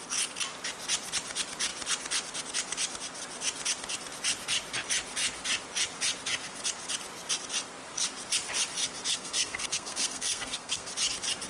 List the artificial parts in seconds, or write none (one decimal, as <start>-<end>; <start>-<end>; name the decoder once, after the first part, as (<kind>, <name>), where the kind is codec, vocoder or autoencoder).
9.1-10.9 (codec, SNAC)